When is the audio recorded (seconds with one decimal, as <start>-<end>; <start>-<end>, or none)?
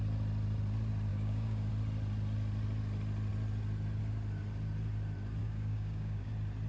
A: 0.0-1.1; 1.7-5.4; 6.3-6.7